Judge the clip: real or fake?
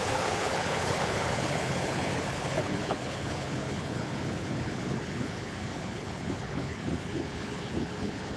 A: fake